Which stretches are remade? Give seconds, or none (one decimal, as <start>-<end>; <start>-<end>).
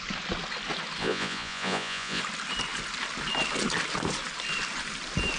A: 1.0-2.2